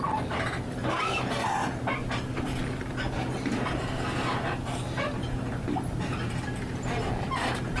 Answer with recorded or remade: recorded